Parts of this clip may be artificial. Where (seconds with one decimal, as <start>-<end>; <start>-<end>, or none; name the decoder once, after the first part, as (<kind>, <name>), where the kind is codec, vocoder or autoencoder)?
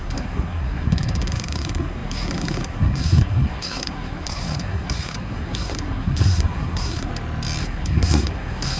0.0-7.1 (codec, SNAC); 7.6-8.8